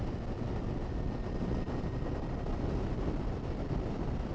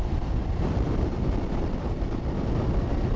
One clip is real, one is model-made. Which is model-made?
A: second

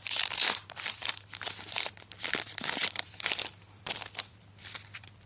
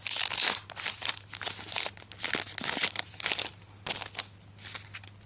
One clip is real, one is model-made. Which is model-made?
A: first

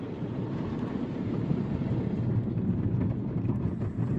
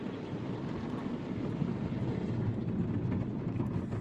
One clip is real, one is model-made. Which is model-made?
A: first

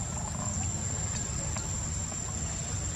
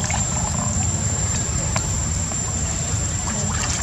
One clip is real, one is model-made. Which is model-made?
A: second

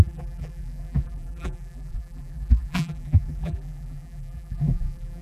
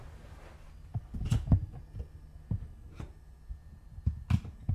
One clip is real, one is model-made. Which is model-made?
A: first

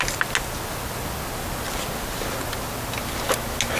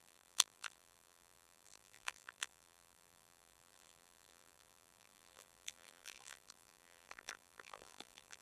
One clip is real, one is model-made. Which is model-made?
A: second